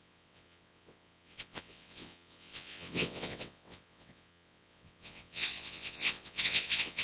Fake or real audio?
fake